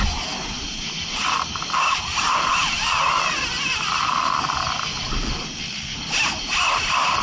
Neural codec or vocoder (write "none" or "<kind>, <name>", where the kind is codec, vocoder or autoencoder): none